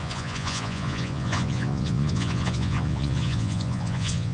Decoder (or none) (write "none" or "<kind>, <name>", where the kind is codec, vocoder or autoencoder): vocoder, Vocos